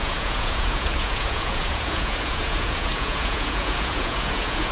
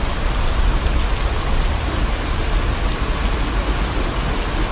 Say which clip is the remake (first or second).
first